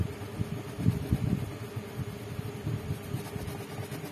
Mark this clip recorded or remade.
recorded